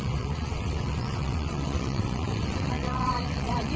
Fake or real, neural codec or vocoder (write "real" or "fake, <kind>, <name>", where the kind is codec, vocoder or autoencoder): fake, vocoder, WaveNeXt